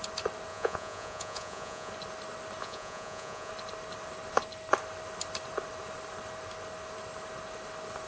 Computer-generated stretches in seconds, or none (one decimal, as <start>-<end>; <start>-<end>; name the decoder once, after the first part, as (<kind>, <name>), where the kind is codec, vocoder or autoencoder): 0.5-1.9 (vocoder, Vocos); 2.6-3.5